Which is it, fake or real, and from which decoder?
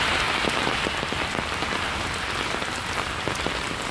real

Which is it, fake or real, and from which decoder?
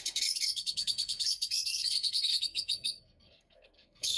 fake, codec, SNAC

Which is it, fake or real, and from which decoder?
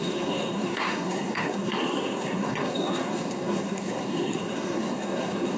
fake, codec, SNAC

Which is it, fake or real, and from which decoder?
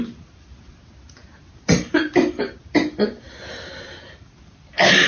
real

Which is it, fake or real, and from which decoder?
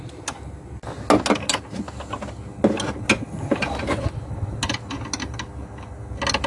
real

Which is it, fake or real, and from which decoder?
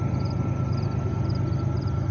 real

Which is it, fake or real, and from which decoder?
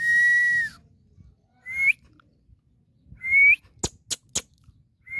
real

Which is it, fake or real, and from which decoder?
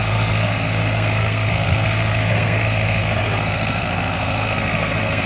fake, codec, SNAC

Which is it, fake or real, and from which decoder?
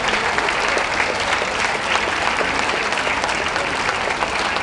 real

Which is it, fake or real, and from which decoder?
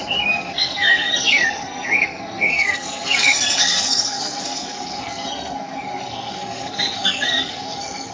fake, codec, SNAC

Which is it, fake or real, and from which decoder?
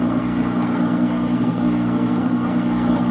fake, codec, SNAC